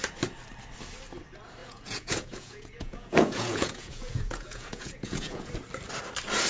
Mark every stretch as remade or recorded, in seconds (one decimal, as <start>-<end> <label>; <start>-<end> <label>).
0.0-1.6 recorded; 1.6-5.5 remade; 5.5-6.5 recorded

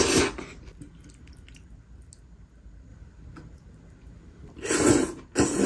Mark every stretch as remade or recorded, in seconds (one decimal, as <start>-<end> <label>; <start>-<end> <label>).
0.0-5.7 recorded